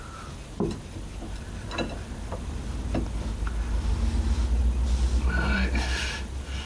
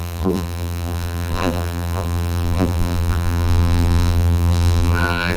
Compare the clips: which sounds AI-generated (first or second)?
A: second